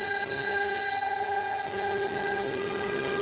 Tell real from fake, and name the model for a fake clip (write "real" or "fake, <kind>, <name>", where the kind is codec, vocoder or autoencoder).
fake, vocoder, HiFi-GAN